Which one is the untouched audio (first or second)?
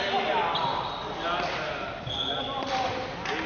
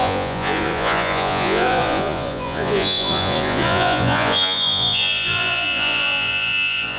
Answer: first